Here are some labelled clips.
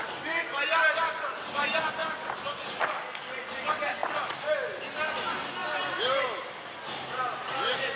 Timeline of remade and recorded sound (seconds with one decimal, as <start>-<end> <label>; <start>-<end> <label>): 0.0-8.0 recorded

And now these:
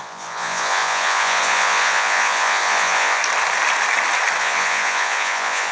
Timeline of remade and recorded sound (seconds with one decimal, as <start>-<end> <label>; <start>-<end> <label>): 0.0-3.2 remade; 3.2-4.4 recorded; 4.4-5.7 remade

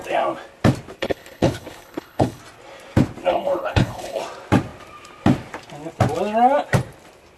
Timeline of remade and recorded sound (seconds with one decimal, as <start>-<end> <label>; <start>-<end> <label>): 0.0-1.0 recorded; 1.0-2.4 remade; 2.4-3.3 recorded; 3.3-4.2 remade; 4.2-7.4 recorded

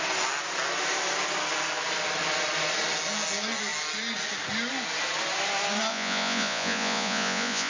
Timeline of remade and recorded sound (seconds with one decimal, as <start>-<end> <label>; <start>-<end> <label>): 0.0-5.9 recorded; 5.9-7.7 remade

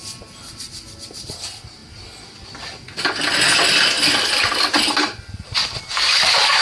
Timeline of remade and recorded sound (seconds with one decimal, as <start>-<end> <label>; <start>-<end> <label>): 0.0-6.6 recorded